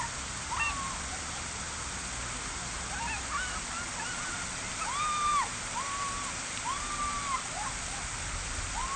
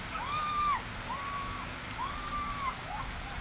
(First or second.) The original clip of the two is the first